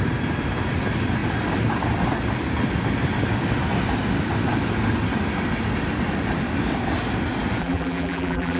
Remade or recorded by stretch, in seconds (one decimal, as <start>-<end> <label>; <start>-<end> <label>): 0.0-7.6 recorded; 7.6-8.6 remade